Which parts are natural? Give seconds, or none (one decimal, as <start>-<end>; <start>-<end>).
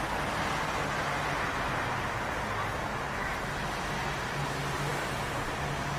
0.0-6.0